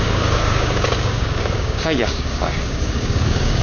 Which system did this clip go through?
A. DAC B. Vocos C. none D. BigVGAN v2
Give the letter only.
A